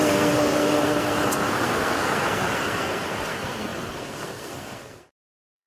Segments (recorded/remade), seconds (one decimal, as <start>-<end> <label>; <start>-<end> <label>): 0.0-5.7 remade